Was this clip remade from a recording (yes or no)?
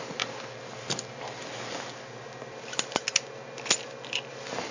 no